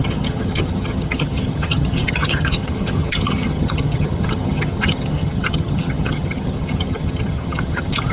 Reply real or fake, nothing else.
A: fake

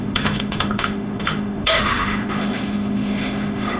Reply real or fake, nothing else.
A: fake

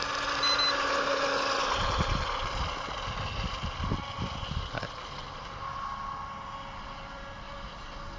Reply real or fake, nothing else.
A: real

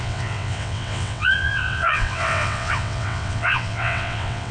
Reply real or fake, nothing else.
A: fake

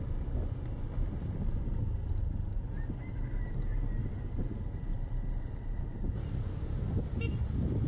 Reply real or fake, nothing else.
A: real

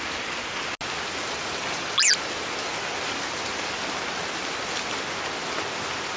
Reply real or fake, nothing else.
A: real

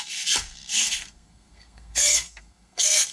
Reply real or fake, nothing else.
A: fake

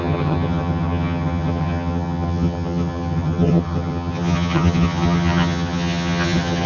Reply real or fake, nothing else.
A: fake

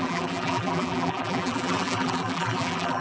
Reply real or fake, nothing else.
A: fake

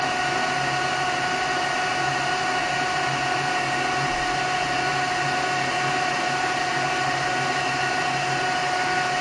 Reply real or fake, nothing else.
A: real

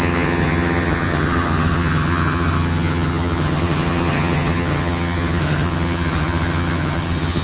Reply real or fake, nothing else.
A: fake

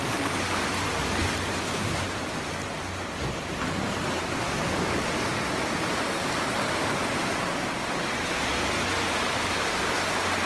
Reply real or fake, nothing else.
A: real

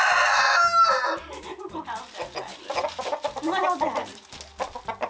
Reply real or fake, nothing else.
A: real